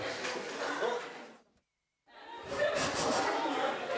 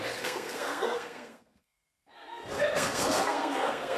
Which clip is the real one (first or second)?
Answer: first